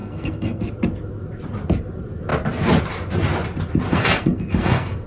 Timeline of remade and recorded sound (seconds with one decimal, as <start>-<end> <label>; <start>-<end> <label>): 0.0-0.6 remade; 0.6-3.9 recorded; 3.9-5.1 remade